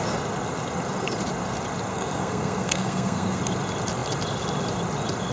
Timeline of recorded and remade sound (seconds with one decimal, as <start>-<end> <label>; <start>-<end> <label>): 0.0-1.9 recorded; 1.9-3.4 remade; 3.4-5.3 recorded